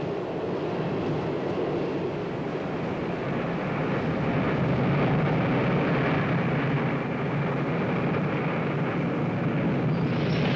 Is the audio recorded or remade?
recorded